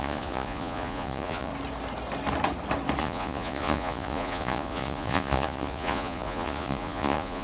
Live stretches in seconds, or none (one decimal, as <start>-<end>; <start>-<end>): 1.5-3.0